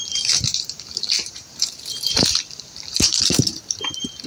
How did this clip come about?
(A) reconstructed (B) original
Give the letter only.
A